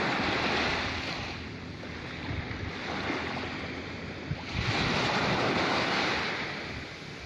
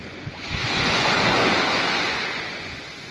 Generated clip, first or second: second